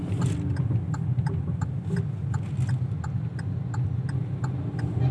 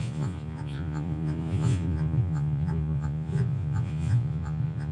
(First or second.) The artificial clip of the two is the second